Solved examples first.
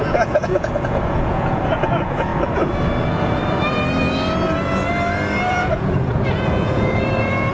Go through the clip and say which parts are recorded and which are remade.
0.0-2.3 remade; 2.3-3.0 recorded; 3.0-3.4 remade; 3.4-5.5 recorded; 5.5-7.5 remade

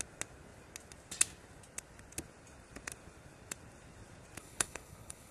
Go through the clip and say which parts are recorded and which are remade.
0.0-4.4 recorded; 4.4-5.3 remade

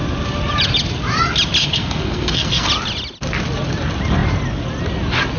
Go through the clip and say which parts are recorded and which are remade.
0.0-1.6 recorded; 1.6-2.7 remade; 2.7-5.4 recorded

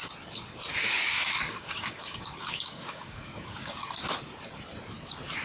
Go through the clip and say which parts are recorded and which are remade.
0.0-0.7 recorded; 0.7-3.9 remade; 3.9-5.4 recorded

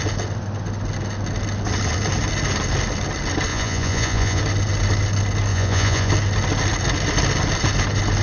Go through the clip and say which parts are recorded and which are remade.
0.0-3.5 recorded; 3.5-4.4 remade; 4.4-5.5 recorded; 5.5-6.1 remade; 6.1-8.2 recorded